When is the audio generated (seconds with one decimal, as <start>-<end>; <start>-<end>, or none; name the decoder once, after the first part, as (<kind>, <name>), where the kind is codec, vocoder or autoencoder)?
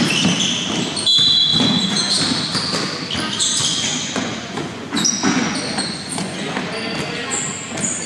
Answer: 1.5-2.2 (vocoder, Vocos); 3.7-6.6